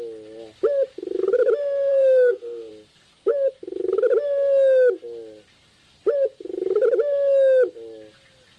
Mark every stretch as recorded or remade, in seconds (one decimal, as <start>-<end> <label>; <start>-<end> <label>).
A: 0.0-1.9 recorded; 1.9-2.7 remade; 2.7-8.6 recorded